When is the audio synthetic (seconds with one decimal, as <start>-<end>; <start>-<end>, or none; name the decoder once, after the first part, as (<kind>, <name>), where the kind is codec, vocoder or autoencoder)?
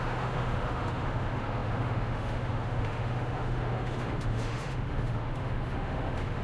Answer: 0.0-6.4 (autoencoder, DAC-VAE)